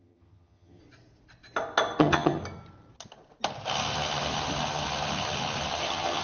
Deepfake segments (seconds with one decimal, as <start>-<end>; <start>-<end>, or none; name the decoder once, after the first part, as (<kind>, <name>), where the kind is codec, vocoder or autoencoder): 0.0-0.8 (vocoder, HiFi-GAN); 2.0-2.4; 5.8-6.2